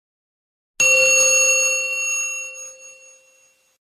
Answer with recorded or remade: recorded